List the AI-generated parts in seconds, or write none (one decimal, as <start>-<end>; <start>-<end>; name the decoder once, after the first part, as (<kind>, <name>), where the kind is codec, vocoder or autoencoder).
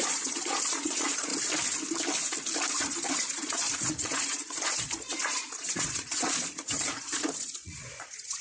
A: 0.0-1.3 (vocoder, Vocos); 2.7-8.4